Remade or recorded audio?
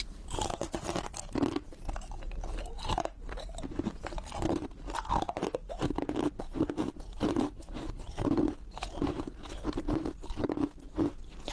remade